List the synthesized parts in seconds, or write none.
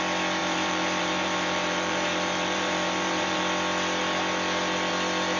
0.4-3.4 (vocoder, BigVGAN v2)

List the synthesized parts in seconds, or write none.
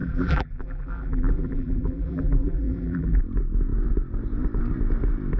0.0-3.2 (vocoder, BigVGAN v2)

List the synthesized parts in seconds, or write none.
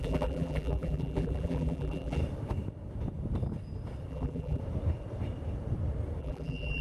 0.0-2.2 (vocoder, BigVGAN v2); 4.1-4.6; 6.2-6.8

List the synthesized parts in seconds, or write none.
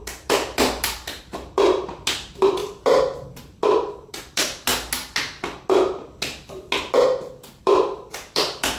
0.0-2.6 (vocoder, BigVGAN v2); 3.4-4.7; 7.6-8.8